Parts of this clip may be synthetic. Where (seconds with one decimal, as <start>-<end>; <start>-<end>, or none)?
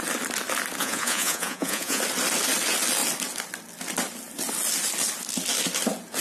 0.8-2.0